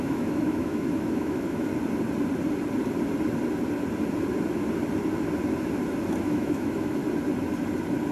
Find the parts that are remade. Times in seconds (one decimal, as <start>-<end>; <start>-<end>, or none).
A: 0.0-1.7; 6.2-7.0